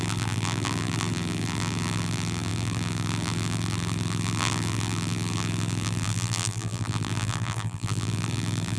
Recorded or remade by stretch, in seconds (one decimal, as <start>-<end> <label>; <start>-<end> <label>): 0.0-8.8 remade